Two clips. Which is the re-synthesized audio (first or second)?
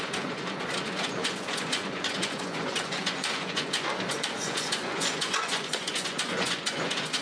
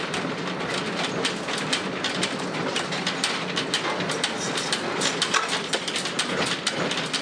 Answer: first